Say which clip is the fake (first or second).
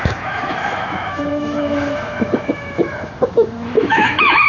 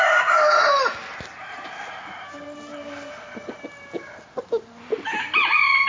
first